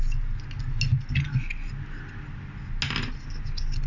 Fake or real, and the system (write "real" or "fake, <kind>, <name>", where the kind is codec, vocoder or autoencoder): real